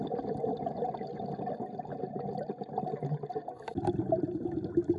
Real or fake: real